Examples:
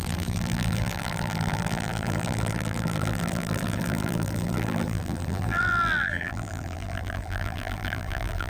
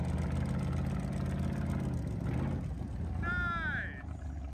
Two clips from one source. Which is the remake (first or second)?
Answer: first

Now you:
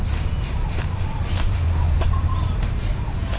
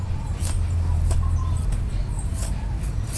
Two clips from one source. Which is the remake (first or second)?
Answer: first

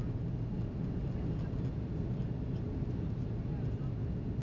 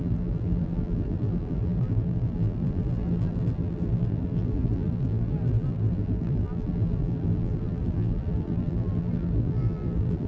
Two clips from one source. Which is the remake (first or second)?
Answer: second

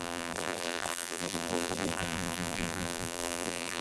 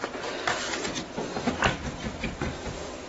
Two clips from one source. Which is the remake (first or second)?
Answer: first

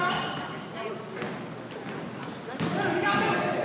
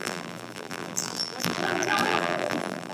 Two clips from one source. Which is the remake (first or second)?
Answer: second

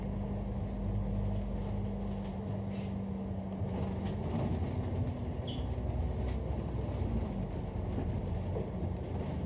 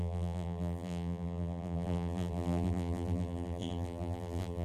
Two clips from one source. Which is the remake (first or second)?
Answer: second